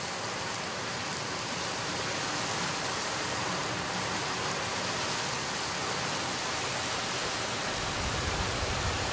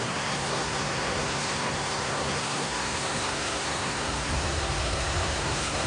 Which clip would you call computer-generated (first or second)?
second